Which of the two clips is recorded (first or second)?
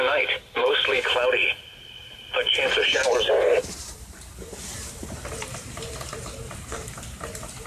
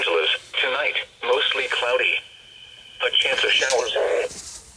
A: second